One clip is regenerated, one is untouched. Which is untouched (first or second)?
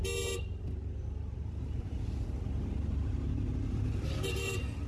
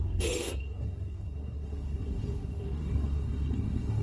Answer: first